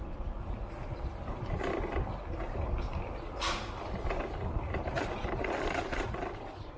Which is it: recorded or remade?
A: recorded